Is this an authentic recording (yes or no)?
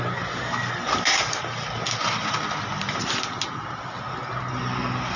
yes